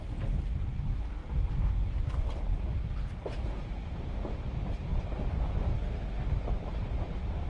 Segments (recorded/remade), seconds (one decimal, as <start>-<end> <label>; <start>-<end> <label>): 0.0-4.9 remade; 4.9-6.2 recorded; 6.2-7.5 remade